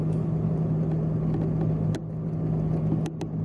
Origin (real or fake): real